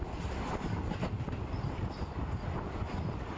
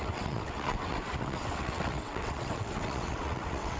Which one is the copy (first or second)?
second